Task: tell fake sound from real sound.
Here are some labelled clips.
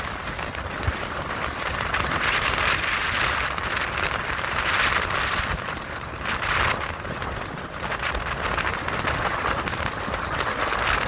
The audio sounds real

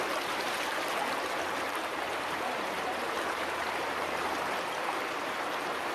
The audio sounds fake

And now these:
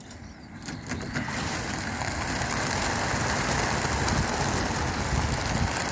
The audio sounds real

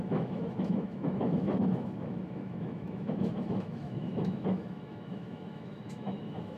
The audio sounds fake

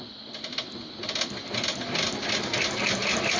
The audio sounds real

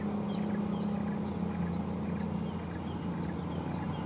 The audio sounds real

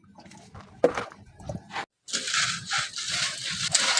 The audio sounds real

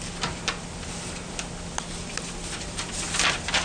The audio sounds real